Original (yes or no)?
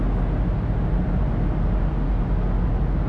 yes